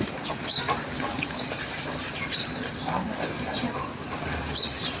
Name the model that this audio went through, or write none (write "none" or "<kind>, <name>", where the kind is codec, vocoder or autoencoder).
none